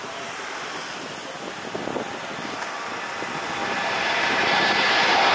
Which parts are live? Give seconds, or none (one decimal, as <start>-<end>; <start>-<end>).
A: 0.0-3.6